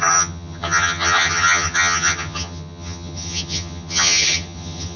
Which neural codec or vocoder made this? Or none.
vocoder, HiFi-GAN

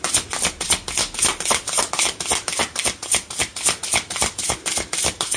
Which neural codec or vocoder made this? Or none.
none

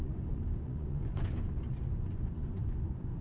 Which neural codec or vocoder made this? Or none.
vocoder, Vocos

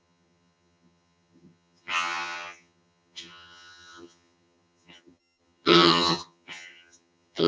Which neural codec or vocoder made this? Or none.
vocoder, HiFi-GAN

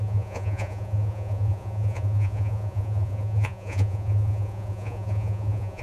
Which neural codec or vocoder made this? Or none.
vocoder, Vocos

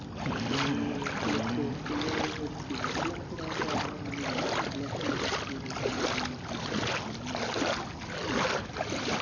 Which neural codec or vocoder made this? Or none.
none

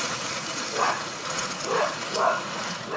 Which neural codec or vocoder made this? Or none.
vocoder, Vocos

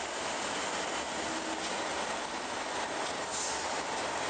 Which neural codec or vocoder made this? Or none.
none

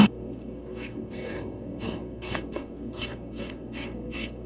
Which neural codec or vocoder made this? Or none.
codec, SNAC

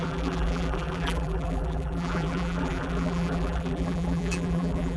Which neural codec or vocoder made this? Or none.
vocoder, BigVGAN v2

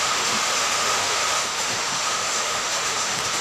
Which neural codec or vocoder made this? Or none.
autoencoder, DAC-VAE